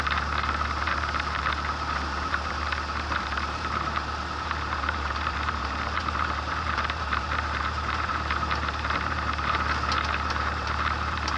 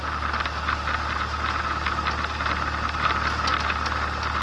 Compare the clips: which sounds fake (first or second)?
first